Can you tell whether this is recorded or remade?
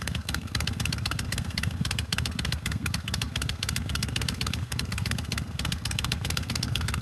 remade